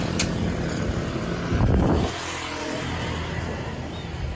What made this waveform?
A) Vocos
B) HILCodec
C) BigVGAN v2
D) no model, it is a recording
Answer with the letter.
D